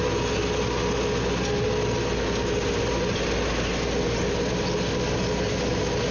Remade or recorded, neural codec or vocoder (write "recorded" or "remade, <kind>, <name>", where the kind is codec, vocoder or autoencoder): recorded